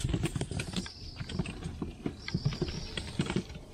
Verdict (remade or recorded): recorded